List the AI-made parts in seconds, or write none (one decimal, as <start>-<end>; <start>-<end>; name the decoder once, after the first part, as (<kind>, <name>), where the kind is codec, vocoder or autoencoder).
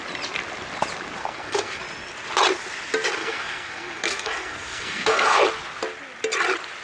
1.2-1.8 (codec, SNAC); 3.2-5.4